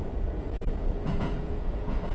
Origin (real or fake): fake